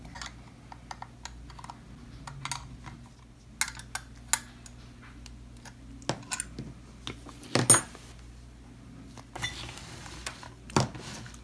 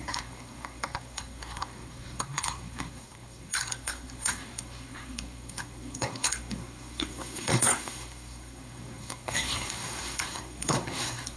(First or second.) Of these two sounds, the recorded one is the first